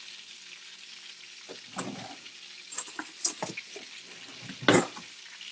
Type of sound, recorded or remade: recorded